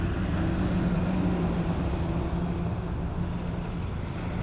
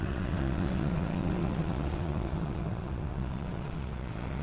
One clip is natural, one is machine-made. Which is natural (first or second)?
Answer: first